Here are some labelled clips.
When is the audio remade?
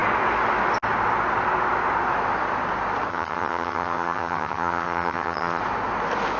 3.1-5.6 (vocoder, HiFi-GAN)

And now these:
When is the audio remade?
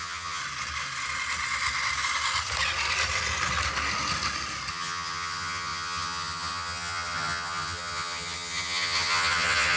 0.0-0.4 (vocoder, HiFi-GAN); 4.7-9.8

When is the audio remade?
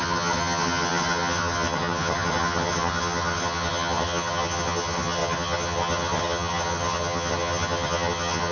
0.0-8.5 (vocoder, HiFi-GAN)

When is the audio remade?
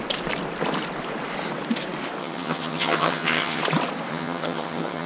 2.2-3.6 (vocoder, HiFi-GAN); 4.1-5.1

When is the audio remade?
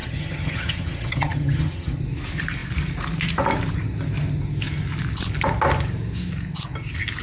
0.0-2.0 (vocoder, HiFi-GAN)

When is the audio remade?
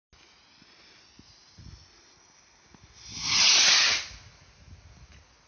none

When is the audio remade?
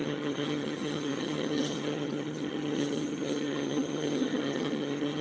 0.0-5.2 (vocoder, HiFi-GAN)